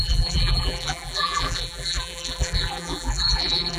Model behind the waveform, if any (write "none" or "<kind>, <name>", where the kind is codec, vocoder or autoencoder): vocoder, BigVGAN v2